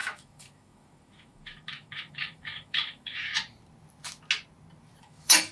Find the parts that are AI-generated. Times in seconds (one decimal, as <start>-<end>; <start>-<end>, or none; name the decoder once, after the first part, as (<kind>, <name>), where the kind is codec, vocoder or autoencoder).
0.0-3.3 (autoencoder, DAC-VAE); 5.0-5.5